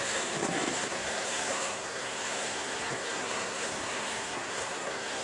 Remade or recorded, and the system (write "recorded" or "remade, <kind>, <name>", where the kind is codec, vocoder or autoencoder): remade, codec, SNAC